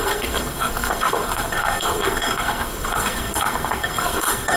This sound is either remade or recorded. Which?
remade